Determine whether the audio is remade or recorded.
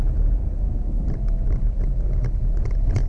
recorded